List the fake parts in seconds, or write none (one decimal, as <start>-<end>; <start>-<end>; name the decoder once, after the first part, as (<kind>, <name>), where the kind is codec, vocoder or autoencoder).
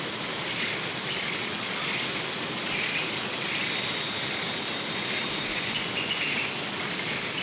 5.5-6.2 (vocoder, Vocos)